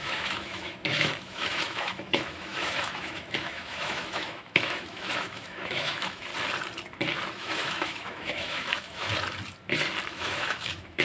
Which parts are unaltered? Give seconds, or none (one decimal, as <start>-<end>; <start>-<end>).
6.3-7.3; 9.1-10.1